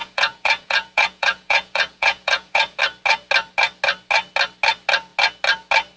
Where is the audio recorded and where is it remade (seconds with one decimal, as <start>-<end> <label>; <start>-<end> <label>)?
0.0-2.8 remade; 2.8-6.0 recorded